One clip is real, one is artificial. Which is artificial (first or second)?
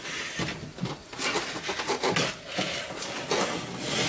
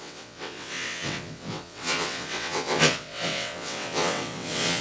second